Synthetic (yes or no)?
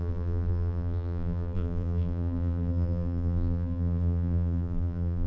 yes